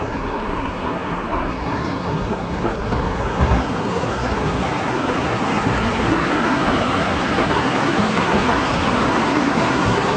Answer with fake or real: fake